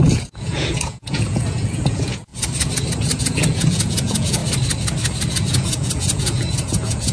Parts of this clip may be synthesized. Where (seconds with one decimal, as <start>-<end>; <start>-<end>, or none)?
0.0-2.3; 3.2-4.4; 5.3-7.1